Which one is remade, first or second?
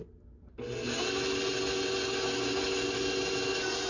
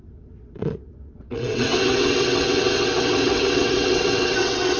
second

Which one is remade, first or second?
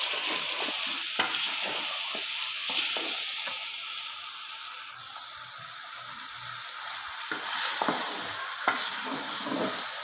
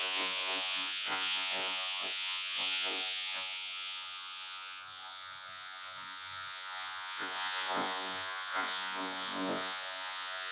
second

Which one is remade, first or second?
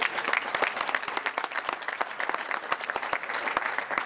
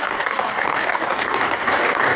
second